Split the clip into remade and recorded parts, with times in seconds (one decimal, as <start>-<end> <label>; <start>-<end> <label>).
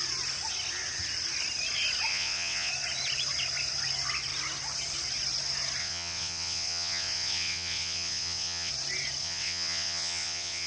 0.0-2.1 recorded; 2.1-2.7 remade; 2.7-5.8 recorded; 5.8-8.7 remade; 8.7-9.2 recorded; 9.2-10.7 remade